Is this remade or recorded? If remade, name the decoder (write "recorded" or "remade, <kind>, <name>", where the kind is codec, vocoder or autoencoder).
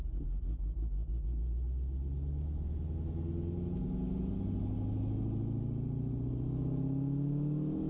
recorded